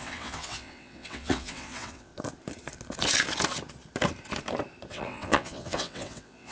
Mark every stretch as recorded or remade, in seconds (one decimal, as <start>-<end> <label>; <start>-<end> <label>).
0.0-2.1 remade; 2.1-4.9 recorded; 4.9-6.5 remade